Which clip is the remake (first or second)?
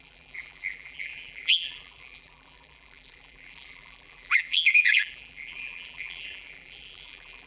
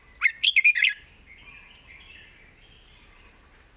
first